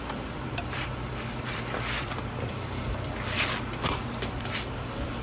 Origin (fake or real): fake